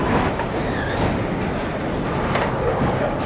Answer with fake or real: real